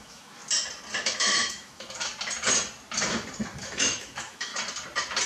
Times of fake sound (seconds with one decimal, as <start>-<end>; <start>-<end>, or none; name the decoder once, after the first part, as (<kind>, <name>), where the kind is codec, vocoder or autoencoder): 0.0-0.4 (autoencoder, DAC-VAE); 1.0-2.1; 3.6-4.5